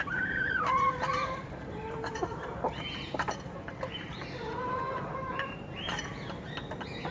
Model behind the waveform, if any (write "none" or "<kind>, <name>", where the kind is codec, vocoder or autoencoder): vocoder, BigVGAN v2